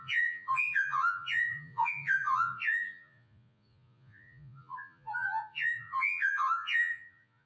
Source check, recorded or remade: remade